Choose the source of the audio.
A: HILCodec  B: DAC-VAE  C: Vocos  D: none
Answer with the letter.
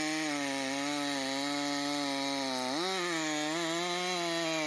D